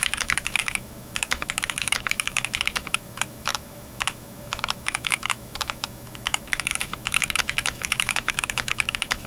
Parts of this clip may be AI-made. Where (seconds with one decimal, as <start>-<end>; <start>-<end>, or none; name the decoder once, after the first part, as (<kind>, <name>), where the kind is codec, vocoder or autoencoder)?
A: 0.0-9.3 (autoencoder, DAC-VAE)